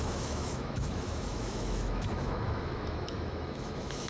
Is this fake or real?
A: fake